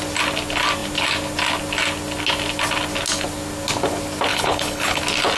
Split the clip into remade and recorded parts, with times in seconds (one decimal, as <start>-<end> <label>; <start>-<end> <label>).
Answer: 0.0-4.3 recorded; 4.3-5.0 remade; 5.0-5.4 recorded